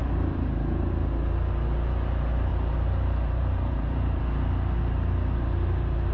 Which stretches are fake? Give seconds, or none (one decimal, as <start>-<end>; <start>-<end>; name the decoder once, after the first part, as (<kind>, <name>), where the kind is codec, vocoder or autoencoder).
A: 0.0-0.9 (vocoder, BigVGAN v2); 2.5-4.2